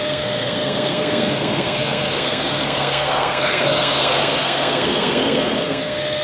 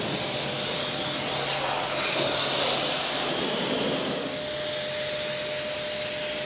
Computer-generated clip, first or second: first